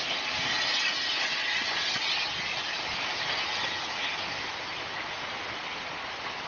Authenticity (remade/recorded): recorded